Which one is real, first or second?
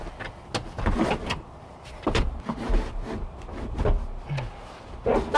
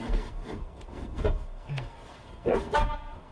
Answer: first